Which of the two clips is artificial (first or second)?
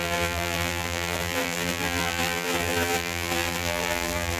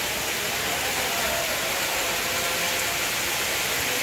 first